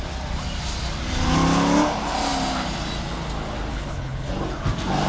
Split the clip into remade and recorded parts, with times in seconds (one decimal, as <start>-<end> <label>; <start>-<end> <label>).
0.0-3.7 recorded; 3.7-4.3 remade; 4.3-5.1 recorded